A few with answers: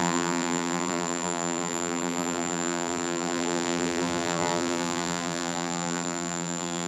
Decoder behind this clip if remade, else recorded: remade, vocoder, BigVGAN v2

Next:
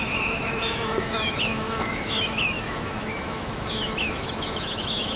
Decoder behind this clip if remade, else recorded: remade, autoencoder, DAC-VAE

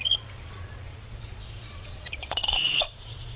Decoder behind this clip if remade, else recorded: remade, vocoder, Vocos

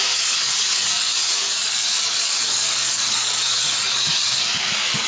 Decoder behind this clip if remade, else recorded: remade, codec, DAC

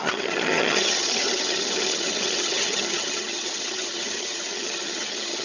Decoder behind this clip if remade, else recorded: remade, vocoder, HiFi-GAN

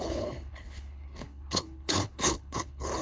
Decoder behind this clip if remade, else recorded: remade, codec, HILCodec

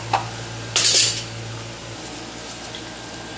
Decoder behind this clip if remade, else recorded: recorded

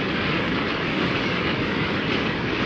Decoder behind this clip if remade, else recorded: remade, codec, DAC